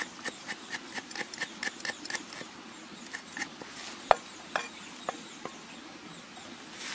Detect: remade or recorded recorded